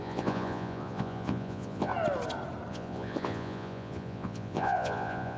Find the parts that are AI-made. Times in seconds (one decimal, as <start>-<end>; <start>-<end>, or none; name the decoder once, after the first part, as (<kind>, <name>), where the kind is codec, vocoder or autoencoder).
0.0-1.9 (vocoder, Vocos); 2.7-5.4